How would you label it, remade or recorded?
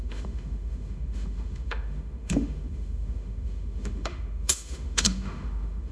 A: remade